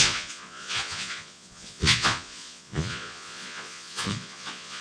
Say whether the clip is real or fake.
fake